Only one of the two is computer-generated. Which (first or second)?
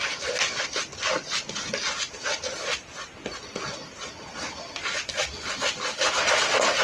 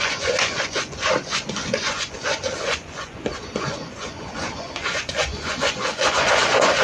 second